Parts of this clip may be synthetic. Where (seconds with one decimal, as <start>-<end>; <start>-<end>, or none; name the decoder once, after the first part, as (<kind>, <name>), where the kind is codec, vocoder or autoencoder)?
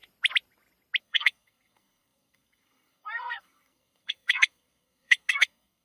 1.0-5.8 (codec, SNAC)